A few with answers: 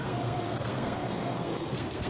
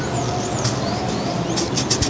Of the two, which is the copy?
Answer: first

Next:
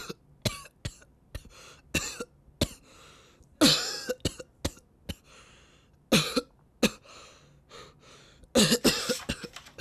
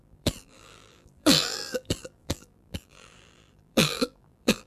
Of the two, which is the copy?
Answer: second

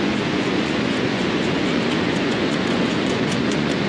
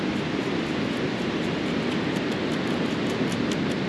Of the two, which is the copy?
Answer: first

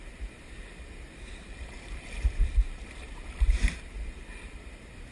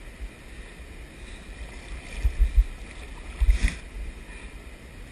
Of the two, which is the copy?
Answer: first